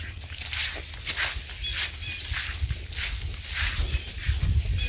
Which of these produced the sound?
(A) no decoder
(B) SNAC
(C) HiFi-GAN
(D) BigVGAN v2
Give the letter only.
A